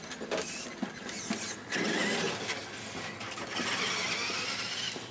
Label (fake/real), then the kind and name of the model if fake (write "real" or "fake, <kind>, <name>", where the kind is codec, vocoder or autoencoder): real